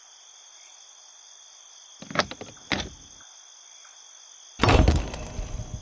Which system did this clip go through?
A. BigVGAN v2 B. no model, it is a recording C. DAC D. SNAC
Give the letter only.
B